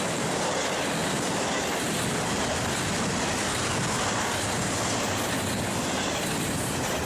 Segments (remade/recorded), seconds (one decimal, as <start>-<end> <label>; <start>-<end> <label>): 0.0-7.1 recorded